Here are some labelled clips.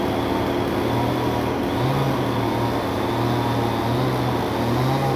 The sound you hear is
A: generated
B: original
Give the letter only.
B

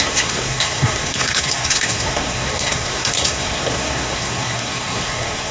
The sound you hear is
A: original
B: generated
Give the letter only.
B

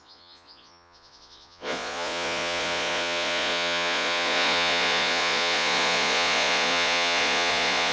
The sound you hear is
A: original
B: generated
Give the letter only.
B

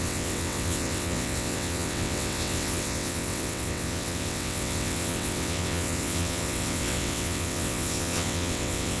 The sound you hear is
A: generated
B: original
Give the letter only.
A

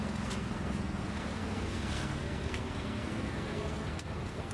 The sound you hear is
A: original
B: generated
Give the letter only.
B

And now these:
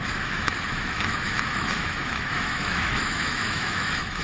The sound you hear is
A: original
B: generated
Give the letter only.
B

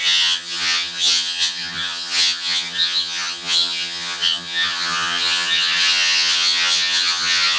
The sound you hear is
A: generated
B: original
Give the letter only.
A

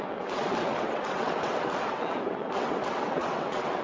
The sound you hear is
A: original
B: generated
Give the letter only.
B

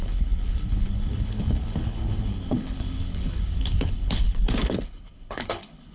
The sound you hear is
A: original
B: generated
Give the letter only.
B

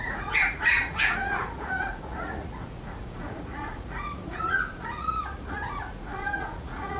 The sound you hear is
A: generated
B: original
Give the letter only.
A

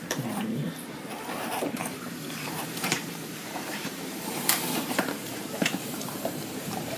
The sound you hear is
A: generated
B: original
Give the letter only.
A